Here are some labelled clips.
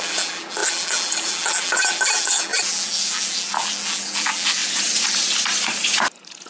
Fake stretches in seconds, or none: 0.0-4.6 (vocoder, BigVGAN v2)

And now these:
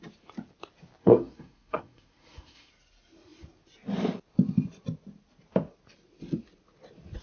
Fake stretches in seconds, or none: 1.0-2.7 (codec, SNAC)